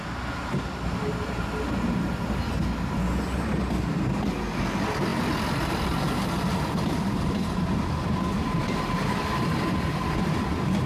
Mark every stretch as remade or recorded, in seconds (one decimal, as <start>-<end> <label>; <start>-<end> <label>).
0.0-5.1 recorded; 5.1-10.2 remade; 10.2-10.9 recorded